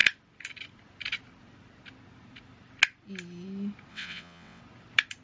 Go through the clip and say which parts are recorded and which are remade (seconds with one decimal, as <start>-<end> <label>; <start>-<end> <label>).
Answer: 0.0-3.9 recorded; 3.9-4.6 remade; 4.6-5.2 recorded

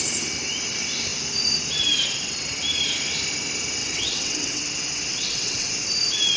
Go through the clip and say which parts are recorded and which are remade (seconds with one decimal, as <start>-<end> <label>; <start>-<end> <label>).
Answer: 0.0-3.8 recorded; 3.8-4.6 remade; 4.6-5.1 recorded; 5.1-5.7 remade; 5.7-6.4 recorded